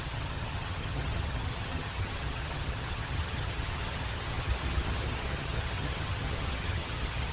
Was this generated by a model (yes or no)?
yes